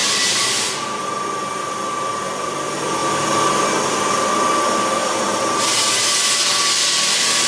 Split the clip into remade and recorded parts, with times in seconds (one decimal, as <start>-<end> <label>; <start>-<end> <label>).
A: 0.0-0.7 remade; 0.7-5.0 recorded; 5.0-5.9 remade; 5.9-7.5 recorded